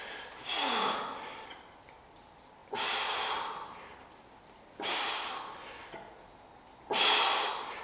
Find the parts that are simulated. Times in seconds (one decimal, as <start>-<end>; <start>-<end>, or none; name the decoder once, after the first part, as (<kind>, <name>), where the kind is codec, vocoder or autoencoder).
none